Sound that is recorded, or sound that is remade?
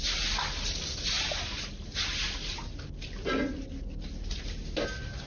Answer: recorded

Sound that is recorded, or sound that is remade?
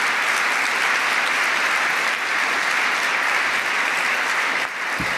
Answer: recorded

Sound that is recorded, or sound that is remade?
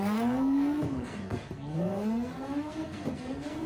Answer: remade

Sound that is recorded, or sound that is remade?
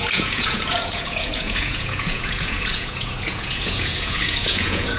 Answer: remade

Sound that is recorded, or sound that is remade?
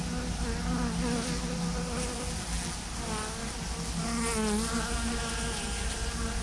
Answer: recorded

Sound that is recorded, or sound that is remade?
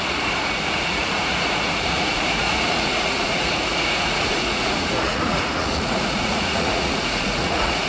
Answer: remade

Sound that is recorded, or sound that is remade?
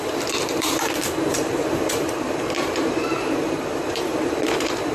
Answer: remade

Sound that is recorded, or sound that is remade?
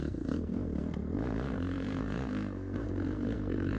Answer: remade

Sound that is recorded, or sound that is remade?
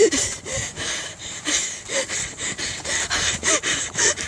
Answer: remade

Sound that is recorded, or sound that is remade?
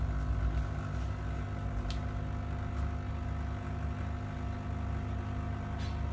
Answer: recorded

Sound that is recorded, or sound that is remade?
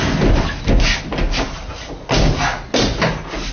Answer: recorded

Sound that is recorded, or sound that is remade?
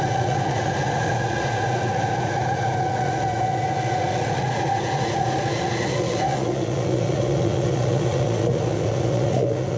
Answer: remade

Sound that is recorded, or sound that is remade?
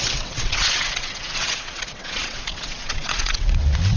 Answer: remade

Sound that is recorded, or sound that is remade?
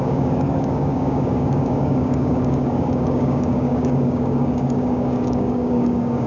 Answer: remade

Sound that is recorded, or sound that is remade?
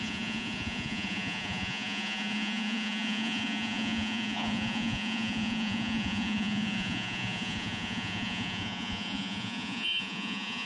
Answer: remade